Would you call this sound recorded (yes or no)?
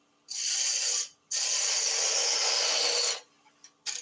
yes